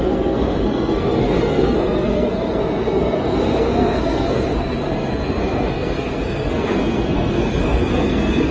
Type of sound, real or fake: fake